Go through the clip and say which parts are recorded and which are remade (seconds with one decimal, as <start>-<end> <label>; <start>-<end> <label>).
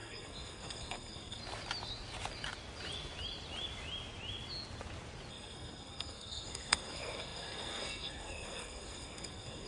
0.0-1.4 remade; 1.4-5.3 recorded; 5.3-9.7 remade